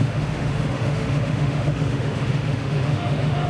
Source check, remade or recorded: remade